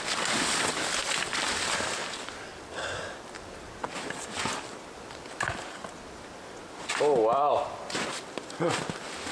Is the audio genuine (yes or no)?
yes